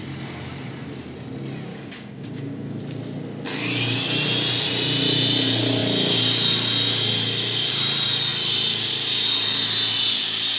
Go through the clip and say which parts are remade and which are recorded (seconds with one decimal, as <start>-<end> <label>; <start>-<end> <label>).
0.0-1.7 recorded; 1.7-2.8 remade; 2.8-10.6 recorded